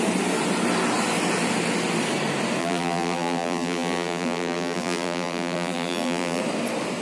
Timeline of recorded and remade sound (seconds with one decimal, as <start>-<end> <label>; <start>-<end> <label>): 0.0-2.6 recorded; 2.6-6.4 remade; 6.4-7.0 recorded